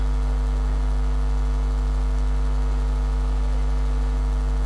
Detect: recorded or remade recorded